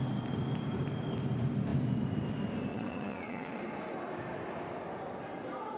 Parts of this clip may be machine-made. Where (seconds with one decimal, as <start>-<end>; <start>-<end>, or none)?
2.7-3.6